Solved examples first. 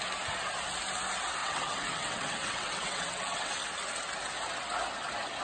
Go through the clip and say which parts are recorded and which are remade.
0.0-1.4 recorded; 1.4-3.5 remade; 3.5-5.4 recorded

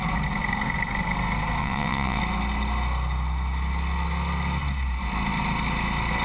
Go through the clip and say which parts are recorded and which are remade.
0.0-1.6 recorded; 1.6-2.2 remade; 2.2-6.2 recorded

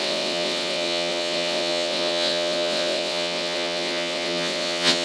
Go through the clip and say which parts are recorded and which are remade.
0.0-5.0 remade

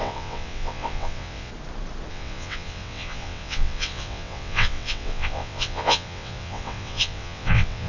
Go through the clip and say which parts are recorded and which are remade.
0.0-1.5 remade; 1.5-2.1 recorded; 2.1-7.9 remade

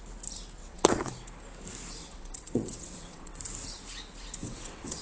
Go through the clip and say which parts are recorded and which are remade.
0.0-0.6 recorded; 0.6-1.1 remade; 1.1-2.0 recorded; 2.0-3.4 remade; 3.4-4.4 recorded; 4.4-5.0 remade

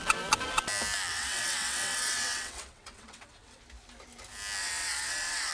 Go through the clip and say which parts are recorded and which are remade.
0.0-1.1 recorded; 1.1-3.6 remade; 3.6-4.6 recorded; 4.6-5.5 remade

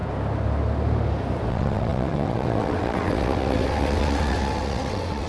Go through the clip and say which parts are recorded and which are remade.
0.0-1.5 recorded; 1.5-5.3 remade